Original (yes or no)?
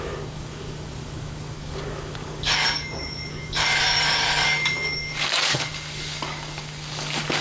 no